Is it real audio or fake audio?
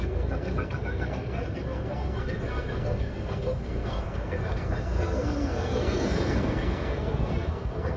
fake